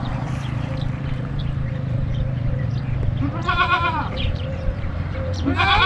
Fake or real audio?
fake